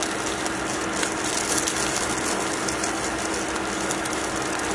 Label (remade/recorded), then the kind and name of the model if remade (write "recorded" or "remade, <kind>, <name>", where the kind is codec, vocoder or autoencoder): recorded